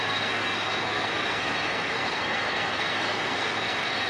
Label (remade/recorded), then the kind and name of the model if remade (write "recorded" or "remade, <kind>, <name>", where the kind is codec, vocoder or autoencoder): remade, codec, SNAC